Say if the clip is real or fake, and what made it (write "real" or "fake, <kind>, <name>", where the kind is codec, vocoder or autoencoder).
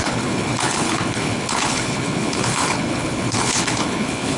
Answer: fake, codec, HILCodec